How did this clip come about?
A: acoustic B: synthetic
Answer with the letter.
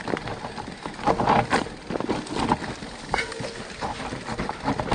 A